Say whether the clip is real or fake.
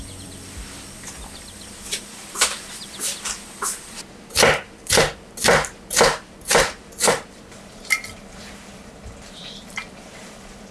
fake